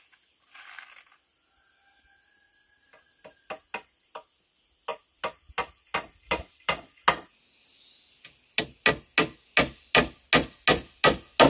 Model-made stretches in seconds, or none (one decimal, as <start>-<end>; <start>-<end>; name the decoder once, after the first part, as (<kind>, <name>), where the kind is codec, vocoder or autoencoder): none